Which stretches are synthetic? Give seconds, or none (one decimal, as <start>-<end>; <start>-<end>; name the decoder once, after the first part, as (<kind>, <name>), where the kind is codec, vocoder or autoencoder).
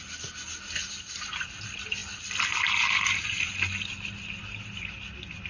none